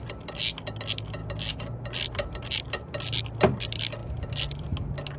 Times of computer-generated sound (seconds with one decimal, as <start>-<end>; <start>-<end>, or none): none